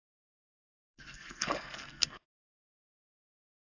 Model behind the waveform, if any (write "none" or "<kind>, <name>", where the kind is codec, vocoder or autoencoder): codec, SNAC